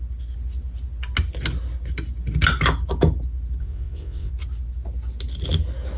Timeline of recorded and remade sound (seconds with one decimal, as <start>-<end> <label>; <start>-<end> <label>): 0.0-3.6 recorded; 3.6-4.3 remade; 4.3-6.0 recorded